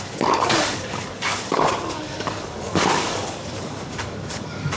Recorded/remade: remade